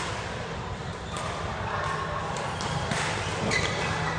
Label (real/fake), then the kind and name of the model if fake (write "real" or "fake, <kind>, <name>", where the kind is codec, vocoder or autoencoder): real